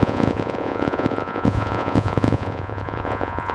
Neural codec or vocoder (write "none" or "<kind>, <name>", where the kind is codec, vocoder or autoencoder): vocoder, Vocos